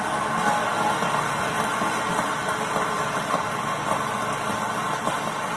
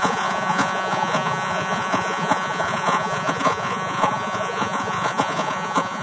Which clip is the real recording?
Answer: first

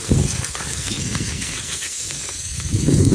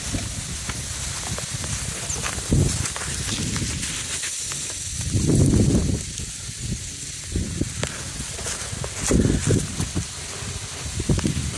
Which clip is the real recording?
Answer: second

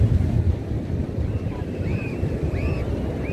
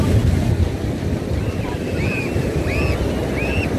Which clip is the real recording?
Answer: second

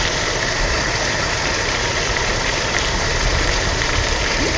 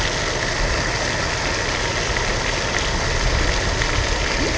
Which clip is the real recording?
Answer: second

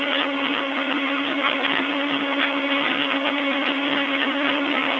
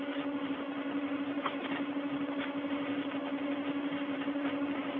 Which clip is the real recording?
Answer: second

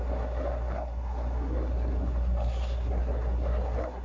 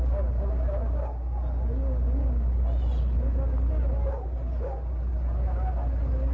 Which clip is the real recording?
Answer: second